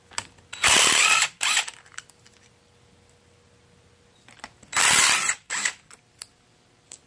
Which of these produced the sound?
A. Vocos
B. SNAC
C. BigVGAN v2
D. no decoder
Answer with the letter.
D